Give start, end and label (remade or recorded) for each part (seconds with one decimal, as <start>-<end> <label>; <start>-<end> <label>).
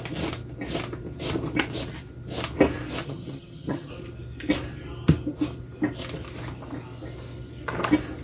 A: 0.0-3.0 recorded; 3.0-3.9 remade; 3.9-8.2 recorded